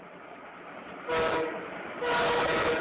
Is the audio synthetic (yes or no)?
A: no